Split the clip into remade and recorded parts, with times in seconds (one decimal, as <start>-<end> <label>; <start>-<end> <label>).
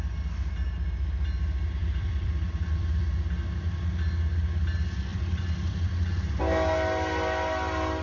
0.0-1.8 recorded; 1.8-3.0 remade; 3.0-5.1 recorded; 5.1-6.4 remade; 6.4-8.0 recorded